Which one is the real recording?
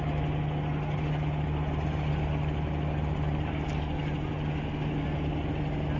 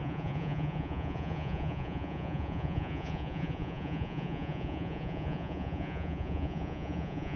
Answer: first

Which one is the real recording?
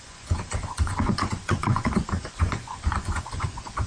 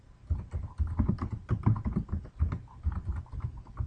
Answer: second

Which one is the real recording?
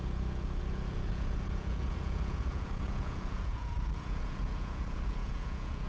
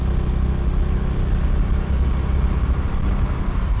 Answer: second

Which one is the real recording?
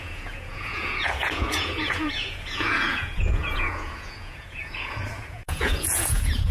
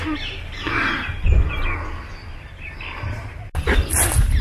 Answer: second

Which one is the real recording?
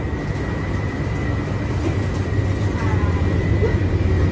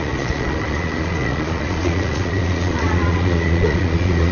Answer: first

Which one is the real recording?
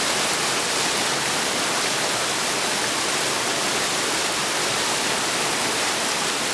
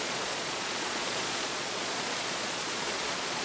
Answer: first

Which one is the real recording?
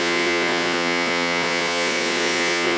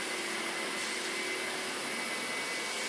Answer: second